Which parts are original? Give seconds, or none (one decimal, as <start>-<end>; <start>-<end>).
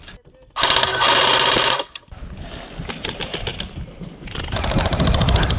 0.0-0.9; 2.5-5.6